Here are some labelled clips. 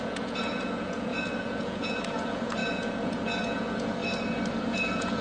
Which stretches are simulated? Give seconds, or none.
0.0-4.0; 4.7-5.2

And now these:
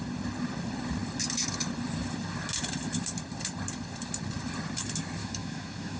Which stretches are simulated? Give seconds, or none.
5.2-6.0